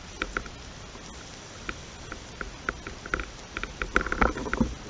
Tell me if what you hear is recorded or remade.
recorded